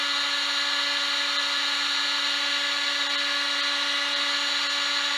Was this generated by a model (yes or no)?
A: no